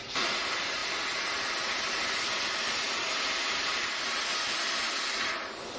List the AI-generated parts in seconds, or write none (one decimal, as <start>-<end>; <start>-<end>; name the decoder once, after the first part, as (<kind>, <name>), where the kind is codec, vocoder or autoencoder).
none